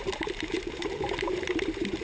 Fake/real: fake